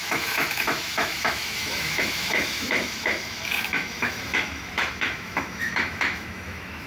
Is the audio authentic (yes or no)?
no